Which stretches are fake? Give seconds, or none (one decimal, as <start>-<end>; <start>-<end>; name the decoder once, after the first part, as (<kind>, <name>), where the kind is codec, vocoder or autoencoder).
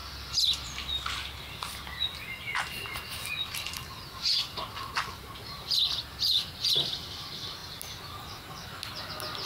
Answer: none